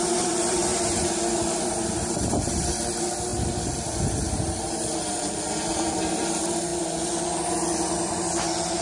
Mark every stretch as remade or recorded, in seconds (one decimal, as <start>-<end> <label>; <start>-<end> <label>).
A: 0.0-6.7 remade; 6.7-7.5 recorded; 7.5-8.8 remade